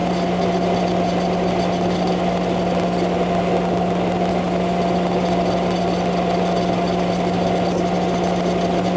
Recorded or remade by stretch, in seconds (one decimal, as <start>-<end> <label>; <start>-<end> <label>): 0.0-9.0 recorded